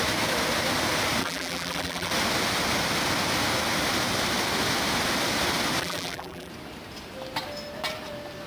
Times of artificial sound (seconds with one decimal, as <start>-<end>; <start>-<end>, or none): 1.2-2.1; 5.8-6.5